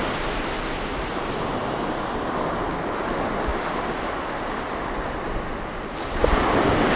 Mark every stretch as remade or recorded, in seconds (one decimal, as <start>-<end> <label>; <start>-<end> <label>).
0.0-7.0 recorded